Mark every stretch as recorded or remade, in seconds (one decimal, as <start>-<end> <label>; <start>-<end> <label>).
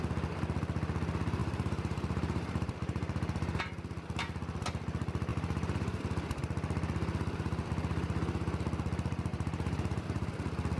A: 0.0-1.4 recorded; 1.4-3.6 remade; 3.6-5.3 recorded; 5.3-6.0 remade; 6.0-9.3 recorded; 9.3-10.3 remade; 10.3-10.8 recorded